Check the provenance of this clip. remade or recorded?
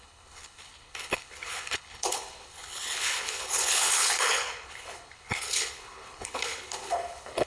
remade